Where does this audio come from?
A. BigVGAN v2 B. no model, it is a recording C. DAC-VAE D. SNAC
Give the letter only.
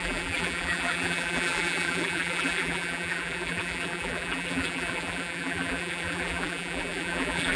A